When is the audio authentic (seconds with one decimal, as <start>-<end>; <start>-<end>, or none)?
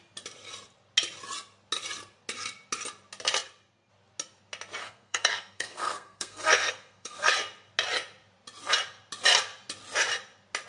0.0-4.8; 7.3-10.7